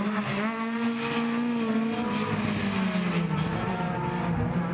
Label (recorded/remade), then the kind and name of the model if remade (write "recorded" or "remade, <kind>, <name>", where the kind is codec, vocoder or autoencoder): recorded